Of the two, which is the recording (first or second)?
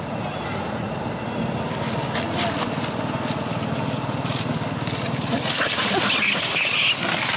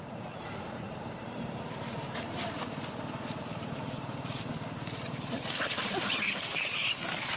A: first